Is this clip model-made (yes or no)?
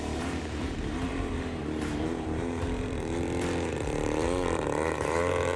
yes